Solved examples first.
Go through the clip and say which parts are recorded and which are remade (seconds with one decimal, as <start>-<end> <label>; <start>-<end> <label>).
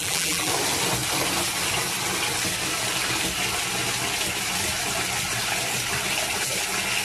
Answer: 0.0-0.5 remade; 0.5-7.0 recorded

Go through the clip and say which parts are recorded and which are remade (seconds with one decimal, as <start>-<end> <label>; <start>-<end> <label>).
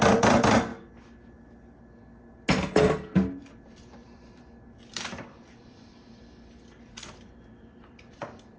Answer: 0.0-0.7 remade; 0.7-3.4 recorded; 3.4-8.6 remade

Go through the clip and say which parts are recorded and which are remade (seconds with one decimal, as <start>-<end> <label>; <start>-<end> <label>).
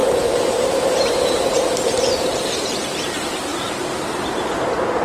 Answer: 0.0-3.0 remade; 3.0-3.5 recorded; 3.5-4.5 remade; 4.5-5.0 recorded